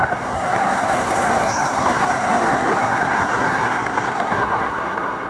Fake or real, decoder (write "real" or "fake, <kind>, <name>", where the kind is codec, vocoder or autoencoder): fake, codec, SNAC